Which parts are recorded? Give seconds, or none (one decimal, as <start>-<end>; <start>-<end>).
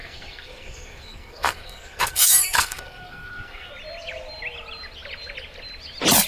3.7-6.3